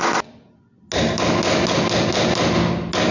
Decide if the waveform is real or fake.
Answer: real